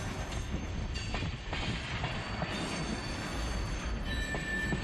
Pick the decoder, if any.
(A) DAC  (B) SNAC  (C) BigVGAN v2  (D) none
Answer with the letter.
D